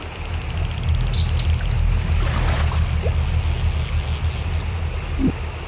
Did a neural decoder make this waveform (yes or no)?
no